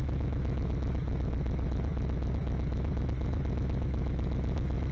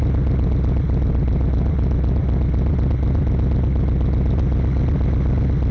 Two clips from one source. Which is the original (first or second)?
second